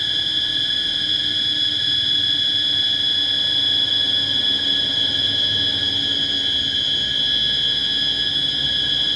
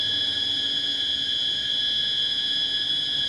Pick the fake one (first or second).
second